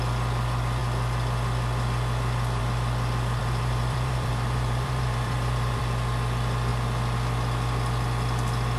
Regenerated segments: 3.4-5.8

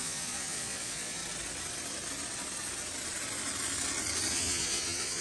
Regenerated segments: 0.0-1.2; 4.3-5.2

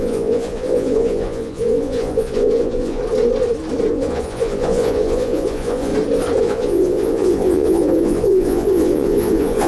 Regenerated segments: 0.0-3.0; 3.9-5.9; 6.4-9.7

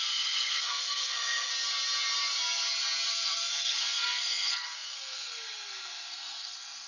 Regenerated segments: 0.0-1.5; 3.1-6.9